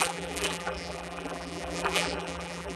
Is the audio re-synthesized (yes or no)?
yes